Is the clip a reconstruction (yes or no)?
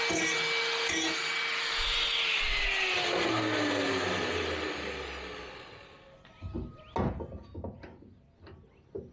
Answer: no